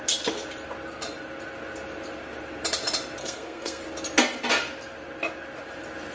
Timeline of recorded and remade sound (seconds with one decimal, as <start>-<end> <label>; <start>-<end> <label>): 0.0-3.2 recorded; 3.2-3.8 remade; 3.8-6.1 recorded